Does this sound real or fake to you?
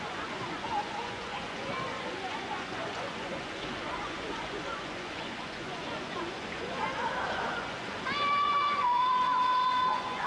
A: fake